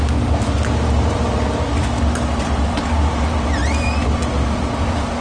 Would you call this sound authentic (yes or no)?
yes